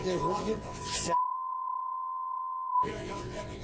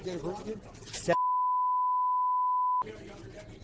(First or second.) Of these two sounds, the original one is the second